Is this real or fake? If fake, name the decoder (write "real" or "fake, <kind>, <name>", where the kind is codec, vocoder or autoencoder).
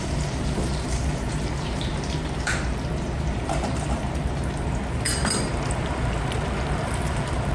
fake, vocoder, BigVGAN v2